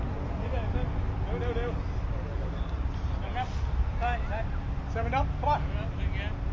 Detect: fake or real real